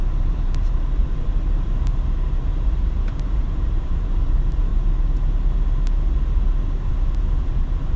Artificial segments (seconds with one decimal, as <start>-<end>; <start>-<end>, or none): 0.0-4.7; 6.9-8.0